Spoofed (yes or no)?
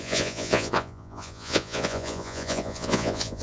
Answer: yes